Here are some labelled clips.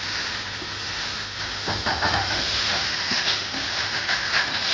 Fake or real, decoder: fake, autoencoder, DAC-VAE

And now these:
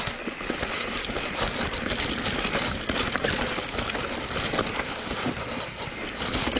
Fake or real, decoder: real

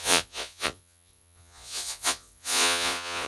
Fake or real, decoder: fake, vocoder, Vocos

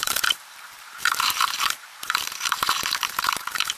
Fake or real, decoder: fake, vocoder, BigVGAN v2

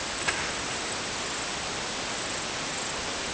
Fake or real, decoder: real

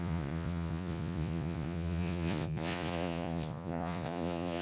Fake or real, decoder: fake, vocoder, Vocos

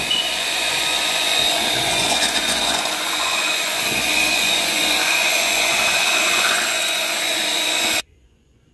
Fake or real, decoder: fake, vocoder, Vocos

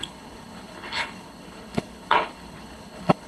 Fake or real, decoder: fake, codec, HILCodec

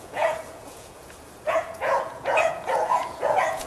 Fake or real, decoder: fake, vocoder, Vocos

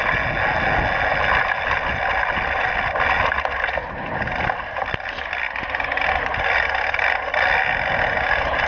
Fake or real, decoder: real